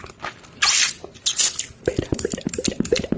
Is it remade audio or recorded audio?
recorded